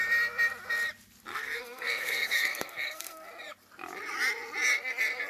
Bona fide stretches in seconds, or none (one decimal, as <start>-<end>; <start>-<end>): 0.0-1.3; 3.3-5.3